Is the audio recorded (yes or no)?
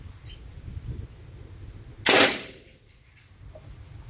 yes